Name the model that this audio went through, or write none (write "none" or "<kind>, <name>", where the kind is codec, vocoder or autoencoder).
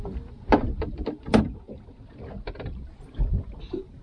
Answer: none